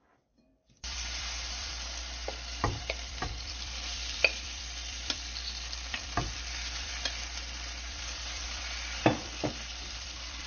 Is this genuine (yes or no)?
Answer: no